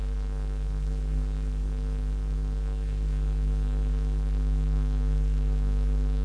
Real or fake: fake